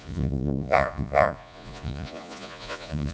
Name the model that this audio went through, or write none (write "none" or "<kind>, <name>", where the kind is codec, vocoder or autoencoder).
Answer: vocoder, Vocos